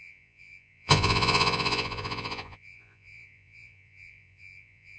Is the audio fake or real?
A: fake